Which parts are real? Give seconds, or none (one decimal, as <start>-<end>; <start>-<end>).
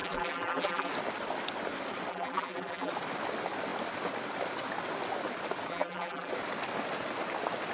0.9-2.1; 2.9-5.7; 6.3-7.7